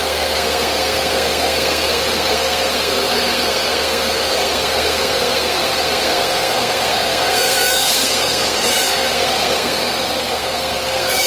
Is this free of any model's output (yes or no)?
no